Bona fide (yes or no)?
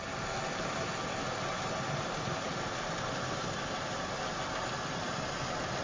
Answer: yes